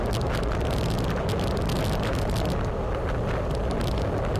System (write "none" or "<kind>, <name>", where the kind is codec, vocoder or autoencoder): none